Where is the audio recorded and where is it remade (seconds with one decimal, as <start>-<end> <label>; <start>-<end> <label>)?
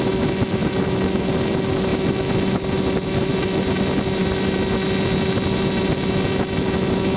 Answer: 0.0-7.2 recorded